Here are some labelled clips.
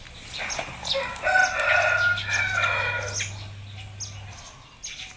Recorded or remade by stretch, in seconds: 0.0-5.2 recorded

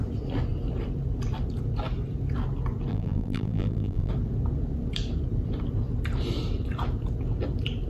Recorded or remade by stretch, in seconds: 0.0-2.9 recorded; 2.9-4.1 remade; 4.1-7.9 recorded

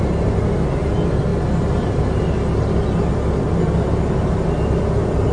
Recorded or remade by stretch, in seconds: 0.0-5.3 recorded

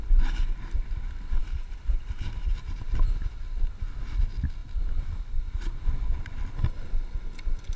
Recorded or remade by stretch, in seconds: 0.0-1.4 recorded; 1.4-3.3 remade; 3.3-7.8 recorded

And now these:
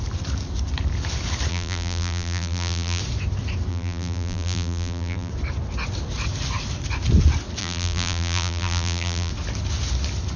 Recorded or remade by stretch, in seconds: 0.0-1.5 recorded; 1.5-3.0 remade; 3.0-3.7 recorded; 3.7-5.3 remade; 5.3-7.6 recorded; 7.6-9.3 remade; 9.3-10.4 recorded